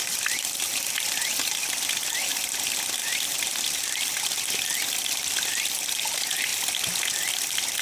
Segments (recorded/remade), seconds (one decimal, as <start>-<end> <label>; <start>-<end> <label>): 0.0-0.7 remade; 0.7-3.0 recorded; 3.0-4.1 remade; 4.1-7.8 recorded